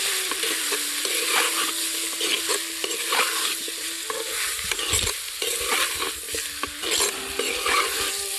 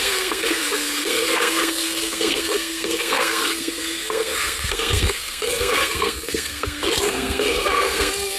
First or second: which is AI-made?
second